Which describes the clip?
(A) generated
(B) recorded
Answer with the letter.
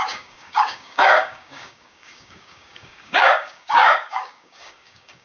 A